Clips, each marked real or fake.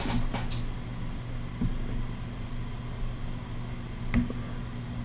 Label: real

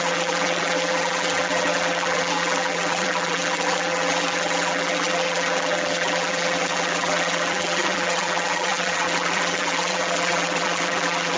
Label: fake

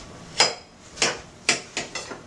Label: real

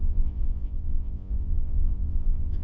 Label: fake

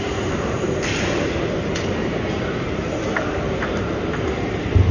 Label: fake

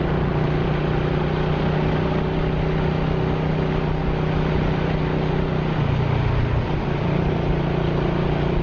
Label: real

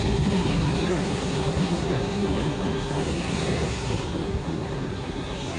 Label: fake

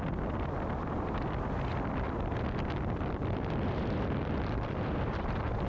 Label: fake